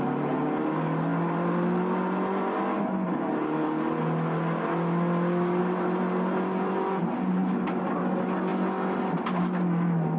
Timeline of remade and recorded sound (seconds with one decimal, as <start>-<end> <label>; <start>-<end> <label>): 0.0-10.2 recorded